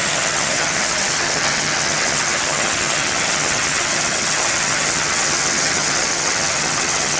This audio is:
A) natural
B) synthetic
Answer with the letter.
B